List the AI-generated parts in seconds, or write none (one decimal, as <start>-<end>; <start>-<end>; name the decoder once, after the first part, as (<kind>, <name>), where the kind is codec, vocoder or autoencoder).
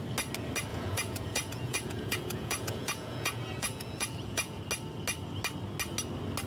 0.7-4.6 (vocoder, Vocos)